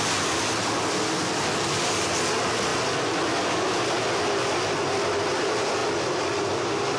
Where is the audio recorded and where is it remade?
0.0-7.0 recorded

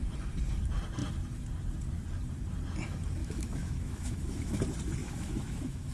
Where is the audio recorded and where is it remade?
0.0-3.2 recorded; 3.2-4.6 remade; 4.6-5.0 recorded; 5.0-5.9 remade